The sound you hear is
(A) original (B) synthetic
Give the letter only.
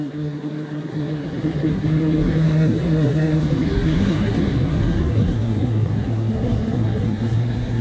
B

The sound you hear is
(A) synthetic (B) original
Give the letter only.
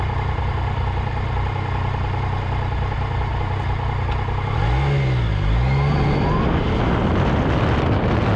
B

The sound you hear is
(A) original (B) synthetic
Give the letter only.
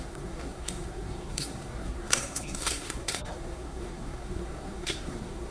B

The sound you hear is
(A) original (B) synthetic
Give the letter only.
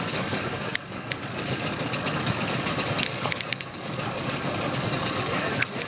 B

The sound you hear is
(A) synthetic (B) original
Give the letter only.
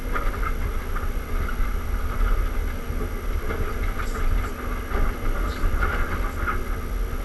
B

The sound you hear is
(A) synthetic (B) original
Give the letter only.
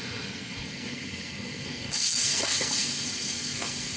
A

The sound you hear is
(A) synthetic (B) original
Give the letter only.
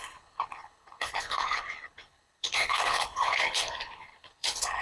A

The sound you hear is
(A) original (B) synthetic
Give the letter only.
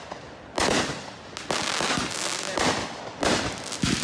A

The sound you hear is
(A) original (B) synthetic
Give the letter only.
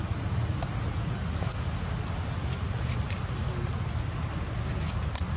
A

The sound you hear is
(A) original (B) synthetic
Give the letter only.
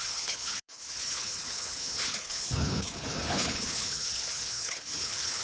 B